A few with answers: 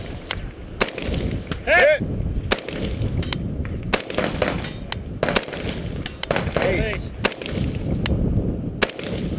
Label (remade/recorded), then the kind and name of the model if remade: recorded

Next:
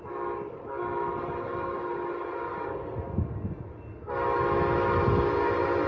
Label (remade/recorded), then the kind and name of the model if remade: recorded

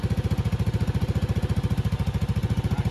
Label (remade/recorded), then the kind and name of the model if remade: recorded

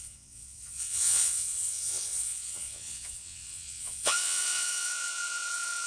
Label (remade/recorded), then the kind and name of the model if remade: remade, vocoder, WaveNeXt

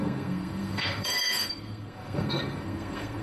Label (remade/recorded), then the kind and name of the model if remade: remade, codec, SNAC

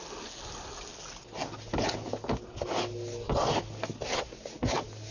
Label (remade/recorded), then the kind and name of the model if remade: recorded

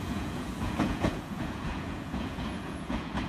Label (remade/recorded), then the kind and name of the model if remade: remade, vocoder, Vocos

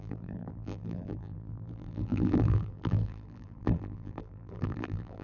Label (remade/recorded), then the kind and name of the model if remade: remade, vocoder, BigVGAN v2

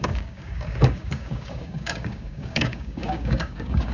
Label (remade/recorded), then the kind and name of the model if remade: remade, codec, DAC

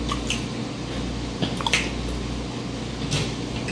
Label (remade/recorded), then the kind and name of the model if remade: recorded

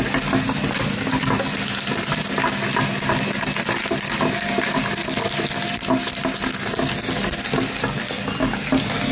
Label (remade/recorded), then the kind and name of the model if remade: recorded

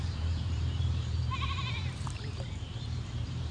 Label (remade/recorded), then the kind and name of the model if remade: remade, vocoder, BigVGAN v2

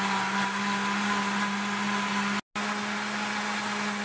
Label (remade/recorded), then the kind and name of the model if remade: recorded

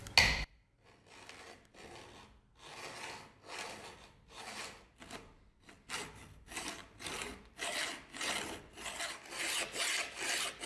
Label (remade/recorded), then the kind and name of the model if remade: recorded